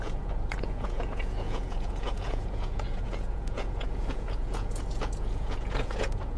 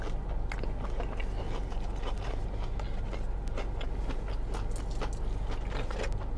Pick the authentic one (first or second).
second